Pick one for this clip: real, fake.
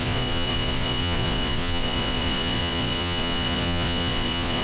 fake